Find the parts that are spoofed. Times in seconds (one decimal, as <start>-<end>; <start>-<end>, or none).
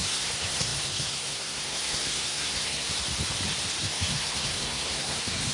0.0-2.9; 3.8-5.5